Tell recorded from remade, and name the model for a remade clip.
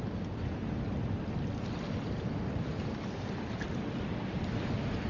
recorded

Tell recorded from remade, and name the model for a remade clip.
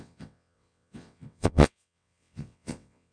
remade, vocoder, WaveNeXt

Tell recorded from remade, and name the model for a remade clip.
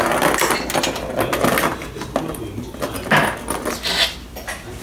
recorded